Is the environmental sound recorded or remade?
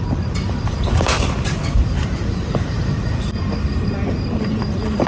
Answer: remade